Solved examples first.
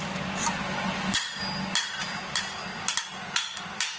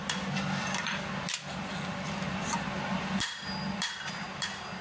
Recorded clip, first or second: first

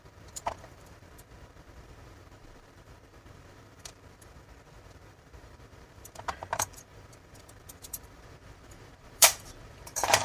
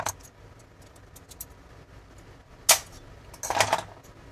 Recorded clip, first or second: second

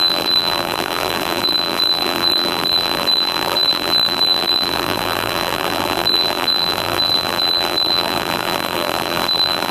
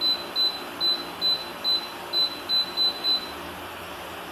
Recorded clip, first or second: second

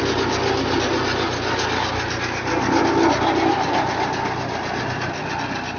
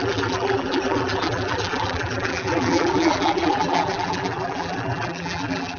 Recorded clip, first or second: first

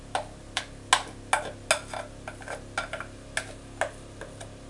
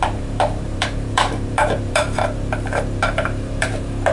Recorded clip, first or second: first